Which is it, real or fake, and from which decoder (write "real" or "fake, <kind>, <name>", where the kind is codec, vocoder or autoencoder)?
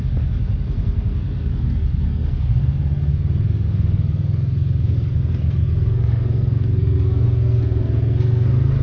fake, codec, SNAC